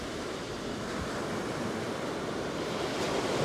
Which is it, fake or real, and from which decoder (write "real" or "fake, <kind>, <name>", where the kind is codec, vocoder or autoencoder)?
real